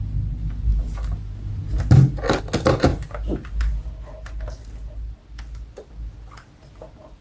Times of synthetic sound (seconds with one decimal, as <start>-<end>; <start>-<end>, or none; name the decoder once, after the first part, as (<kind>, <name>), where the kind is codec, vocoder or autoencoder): none